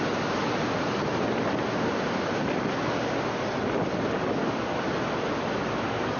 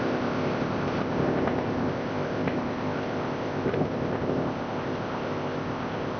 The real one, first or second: first